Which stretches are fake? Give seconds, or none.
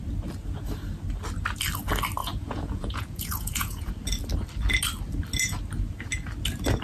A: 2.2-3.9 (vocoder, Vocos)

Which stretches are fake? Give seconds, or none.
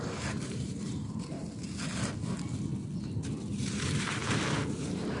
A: 0.0-1.4 (vocoder, BigVGAN v2); 3.5-4.2; 4.7-5.2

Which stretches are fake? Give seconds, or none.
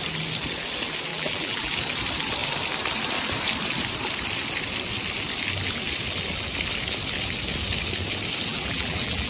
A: 1.1-1.7 (vocoder, BigVGAN v2); 8.5-9.3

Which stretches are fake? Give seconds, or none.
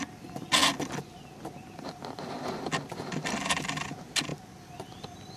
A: none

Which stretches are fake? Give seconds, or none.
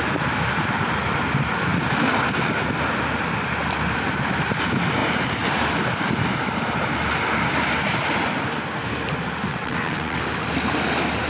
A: 9.5-10.2 (vocoder, WaveNeXt)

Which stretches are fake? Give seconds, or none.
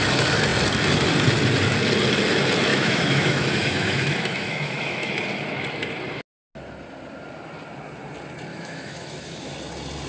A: 2.7-5.1 (autoencoder, DAC-VAE); 8.5-9.5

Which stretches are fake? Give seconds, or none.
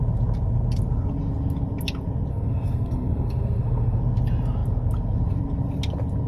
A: 2.3-4.0 (codec, SNAC)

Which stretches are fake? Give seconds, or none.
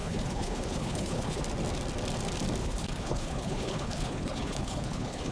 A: 0.0-1.4 (codec, HILCodec); 2.6-5.3